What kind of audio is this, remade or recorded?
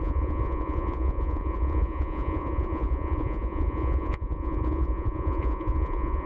remade